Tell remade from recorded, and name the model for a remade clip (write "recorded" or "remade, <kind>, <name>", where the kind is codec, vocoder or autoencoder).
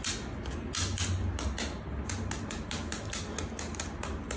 recorded